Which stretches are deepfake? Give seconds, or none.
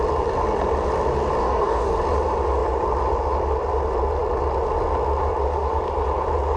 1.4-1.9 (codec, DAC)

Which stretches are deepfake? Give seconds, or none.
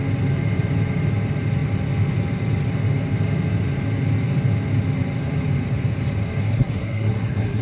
6.4-7.6 (codec, SNAC)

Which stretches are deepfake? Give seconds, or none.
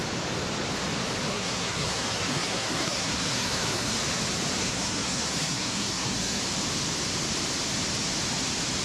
1.3-4.0 (codec, SNAC); 4.6-6.4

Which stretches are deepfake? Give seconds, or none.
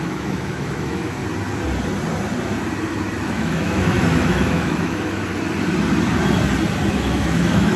0.0-1.2 (autoencoder, DAC-VAE); 3.2-5.3; 6.9-7.8